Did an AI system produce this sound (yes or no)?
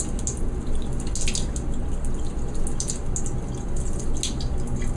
no